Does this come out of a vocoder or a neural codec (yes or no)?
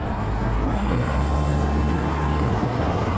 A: yes